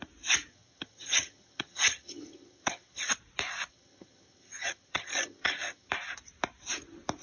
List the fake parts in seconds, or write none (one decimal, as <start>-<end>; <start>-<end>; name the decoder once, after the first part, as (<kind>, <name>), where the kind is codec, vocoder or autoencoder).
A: 0.5-3.1 (vocoder, HiFi-GAN); 3.7-5.9